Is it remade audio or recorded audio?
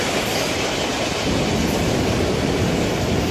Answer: recorded